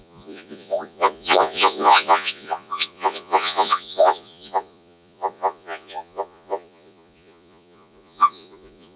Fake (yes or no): yes